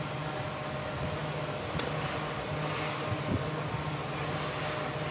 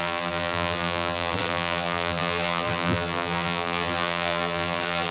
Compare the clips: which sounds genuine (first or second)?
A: first